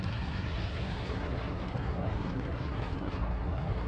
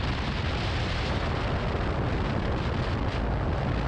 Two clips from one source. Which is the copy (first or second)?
first